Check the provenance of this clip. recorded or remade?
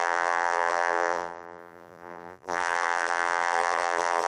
remade